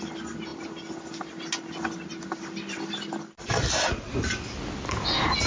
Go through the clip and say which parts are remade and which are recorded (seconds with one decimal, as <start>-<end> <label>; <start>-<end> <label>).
0.0-5.5 recorded

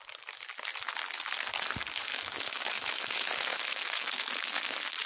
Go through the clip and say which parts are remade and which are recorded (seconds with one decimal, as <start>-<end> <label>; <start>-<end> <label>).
0.0-2.1 recorded; 2.1-4.6 remade; 4.6-5.1 recorded

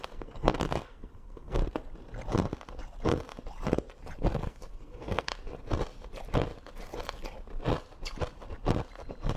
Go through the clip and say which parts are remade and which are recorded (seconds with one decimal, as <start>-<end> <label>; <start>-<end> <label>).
0.0-1.6 remade; 1.6-4.3 recorded; 4.3-5.3 remade; 5.3-9.4 recorded

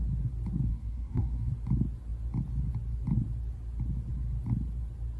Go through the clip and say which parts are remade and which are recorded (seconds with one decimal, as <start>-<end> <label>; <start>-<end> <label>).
0.0-0.7 recorded; 0.7-1.5 remade; 1.5-5.2 recorded

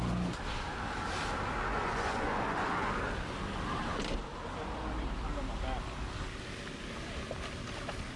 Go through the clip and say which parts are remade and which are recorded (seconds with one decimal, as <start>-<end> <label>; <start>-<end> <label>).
0.0-1.7 recorded; 1.7-2.9 remade; 2.9-8.2 recorded

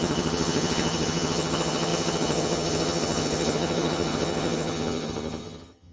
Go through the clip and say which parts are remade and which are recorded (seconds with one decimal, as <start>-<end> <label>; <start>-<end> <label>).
0.0-5.9 remade

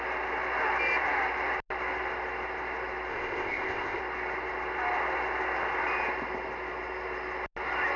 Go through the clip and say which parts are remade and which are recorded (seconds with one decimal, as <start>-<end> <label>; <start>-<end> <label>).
0.0-3.1 recorded; 3.1-4.0 remade; 4.0-8.0 recorded